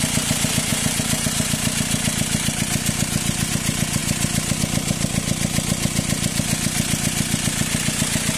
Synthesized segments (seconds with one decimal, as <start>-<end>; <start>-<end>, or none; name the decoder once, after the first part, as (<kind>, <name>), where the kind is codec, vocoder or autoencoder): none